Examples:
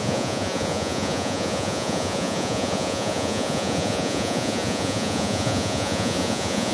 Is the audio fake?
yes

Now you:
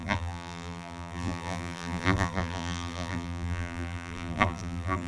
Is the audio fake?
yes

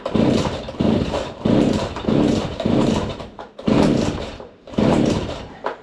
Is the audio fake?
yes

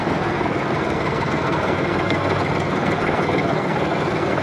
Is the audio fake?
yes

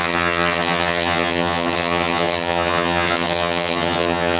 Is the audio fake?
yes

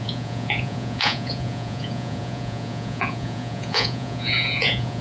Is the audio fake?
yes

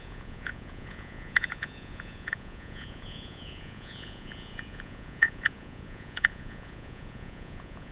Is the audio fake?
yes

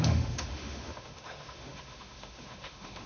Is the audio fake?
yes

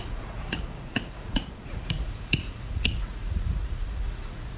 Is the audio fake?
yes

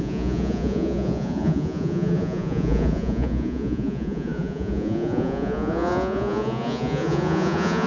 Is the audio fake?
yes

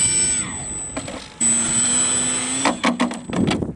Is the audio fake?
no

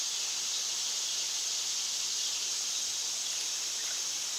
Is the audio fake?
no